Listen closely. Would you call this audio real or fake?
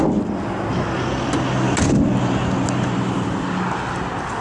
real